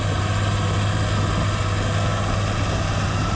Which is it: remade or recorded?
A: recorded